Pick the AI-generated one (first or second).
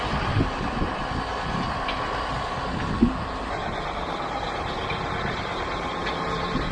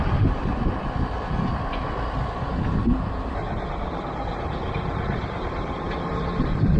second